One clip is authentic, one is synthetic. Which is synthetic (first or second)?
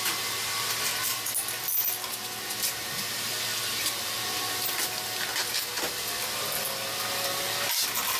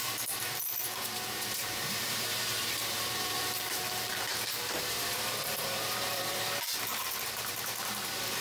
second